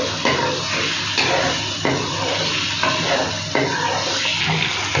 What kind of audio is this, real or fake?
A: real